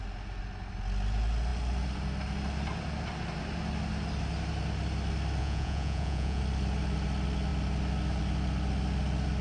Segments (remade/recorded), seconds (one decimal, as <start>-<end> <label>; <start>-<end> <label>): 0.0-5.4 recorded; 5.4-6.4 remade; 6.4-9.4 recorded